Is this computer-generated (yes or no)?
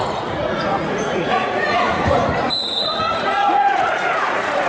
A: yes